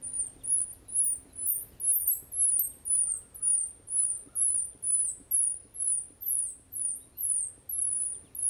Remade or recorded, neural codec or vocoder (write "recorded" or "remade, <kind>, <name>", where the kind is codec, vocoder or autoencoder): recorded